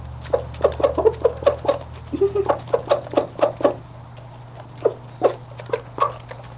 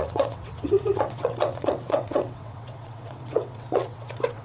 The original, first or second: first